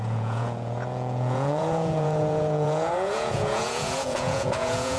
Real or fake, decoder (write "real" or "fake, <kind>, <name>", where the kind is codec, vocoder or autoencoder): fake, vocoder, Vocos